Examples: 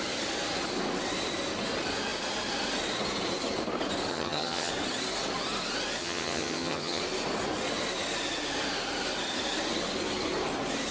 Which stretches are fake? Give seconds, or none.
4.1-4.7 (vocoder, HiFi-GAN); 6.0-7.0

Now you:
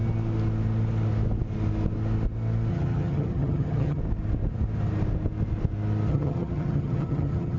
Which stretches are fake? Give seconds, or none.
2.7-4.0 (vocoder, HiFi-GAN); 6.1-7.6

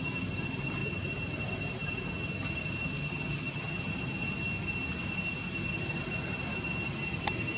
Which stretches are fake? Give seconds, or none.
3.0-3.9 (vocoder, HiFi-GAN)